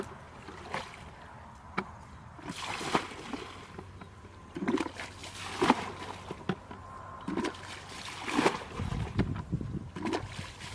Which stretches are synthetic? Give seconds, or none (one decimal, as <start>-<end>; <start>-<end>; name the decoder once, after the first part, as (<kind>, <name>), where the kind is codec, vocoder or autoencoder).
none